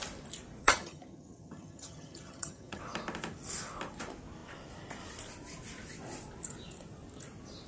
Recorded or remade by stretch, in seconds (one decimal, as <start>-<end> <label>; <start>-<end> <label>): 0.0-0.6 recorded; 0.6-2.8 remade; 2.8-7.7 recorded